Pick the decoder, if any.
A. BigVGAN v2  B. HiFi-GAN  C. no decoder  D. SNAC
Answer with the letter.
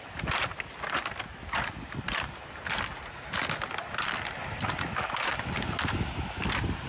C